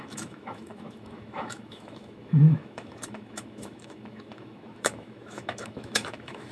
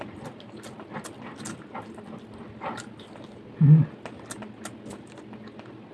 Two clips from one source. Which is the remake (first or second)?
first